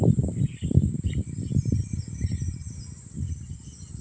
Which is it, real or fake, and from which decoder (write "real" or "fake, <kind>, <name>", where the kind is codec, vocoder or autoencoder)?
real